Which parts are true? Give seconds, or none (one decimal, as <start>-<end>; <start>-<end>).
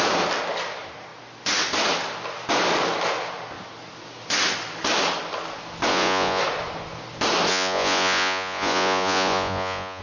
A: 0.0-5.9; 6.4-7.5